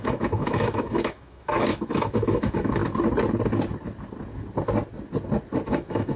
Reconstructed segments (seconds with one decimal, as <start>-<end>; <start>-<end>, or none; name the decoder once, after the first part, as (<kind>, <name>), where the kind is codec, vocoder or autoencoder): 0.0-2.8 (autoencoder, DAC-VAE); 5.7-6.2